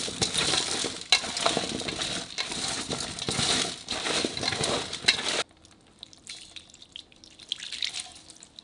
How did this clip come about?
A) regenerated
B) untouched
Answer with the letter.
B